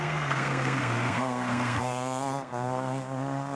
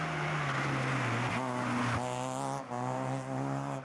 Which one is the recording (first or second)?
second